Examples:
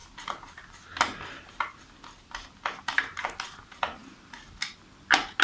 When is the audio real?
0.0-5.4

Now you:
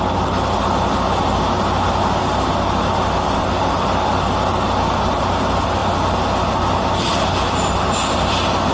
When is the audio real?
0.0-8.7

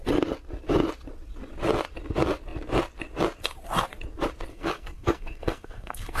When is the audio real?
0.0-4.5